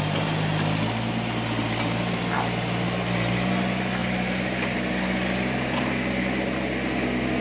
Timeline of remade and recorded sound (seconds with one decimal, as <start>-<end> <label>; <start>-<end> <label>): 0.0-7.4 recorded